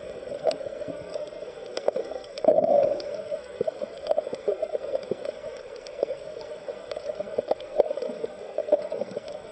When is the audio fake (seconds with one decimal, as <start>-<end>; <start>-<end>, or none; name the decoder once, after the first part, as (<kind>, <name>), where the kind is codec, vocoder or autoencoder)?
0.0-9.5 (codec, SNAC)